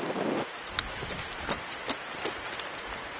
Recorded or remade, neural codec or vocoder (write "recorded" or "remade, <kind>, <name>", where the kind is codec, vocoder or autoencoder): recorded